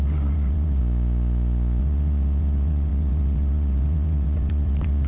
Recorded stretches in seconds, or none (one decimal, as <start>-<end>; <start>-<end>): 0.8-1.8